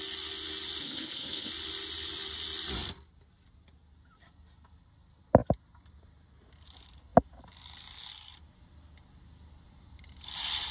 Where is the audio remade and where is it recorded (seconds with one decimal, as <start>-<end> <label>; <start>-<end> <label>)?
0.0-0.8 recorded; 0.8-1.5 remade; 1.5-10.7 recorded